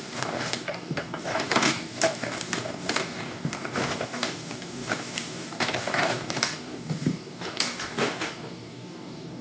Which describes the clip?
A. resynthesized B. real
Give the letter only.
A